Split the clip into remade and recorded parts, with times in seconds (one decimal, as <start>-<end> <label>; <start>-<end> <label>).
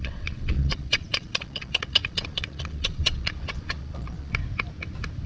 0.0-4.4 remade; 4.4-5.3 recorded